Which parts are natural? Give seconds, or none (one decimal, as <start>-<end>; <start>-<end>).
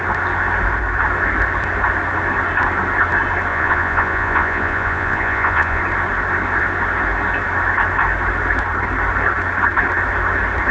0.0-3.5; 5.8-10.7